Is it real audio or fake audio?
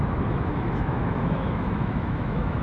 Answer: fake